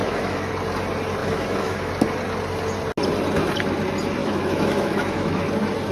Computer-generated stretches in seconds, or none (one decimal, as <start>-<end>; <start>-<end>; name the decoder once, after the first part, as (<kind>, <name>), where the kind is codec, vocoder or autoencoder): 0.0-0.5 (autoencoder, DAC-VAE); 1.2-1.9; 4.2-5.4

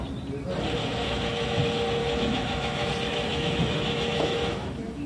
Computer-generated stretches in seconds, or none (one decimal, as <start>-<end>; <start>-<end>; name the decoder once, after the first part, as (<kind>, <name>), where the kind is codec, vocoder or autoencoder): 0.8-1.6 (autoencoder, DAC-VAE); 2.0-2.9; 3.3-5.1

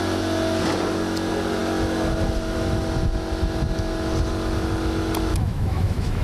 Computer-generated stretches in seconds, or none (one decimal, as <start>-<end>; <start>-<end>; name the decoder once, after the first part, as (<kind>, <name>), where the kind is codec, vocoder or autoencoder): 5.3-6.2 (autoencoder, DAC-VAE)